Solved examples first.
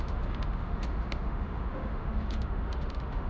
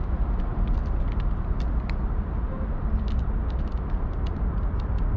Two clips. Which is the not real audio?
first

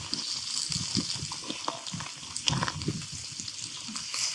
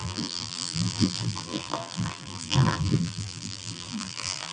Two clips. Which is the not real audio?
second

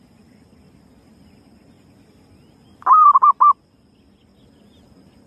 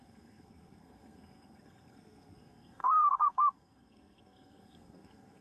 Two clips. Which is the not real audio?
second